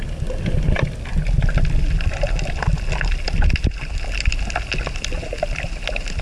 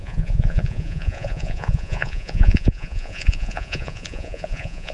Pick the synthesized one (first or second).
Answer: second